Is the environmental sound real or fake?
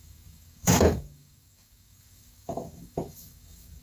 fake